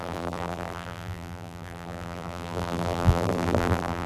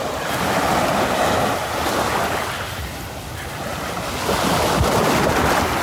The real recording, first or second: second